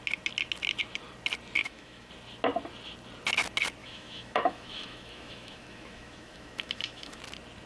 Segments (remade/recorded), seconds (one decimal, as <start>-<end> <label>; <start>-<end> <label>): 0.0-1.6 recorded; 1.6-2.1 remade; 2.1-3.8 recorded; 3.8-7.2 remade; 7.2-7.7 recorded